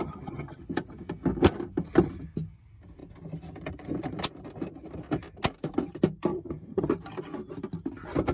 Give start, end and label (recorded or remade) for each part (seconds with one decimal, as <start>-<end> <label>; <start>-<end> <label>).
0.0-0.6 remade; 0.6-6.3 recorded; 6.3-6.9 remade; 6.9-8.3 recorded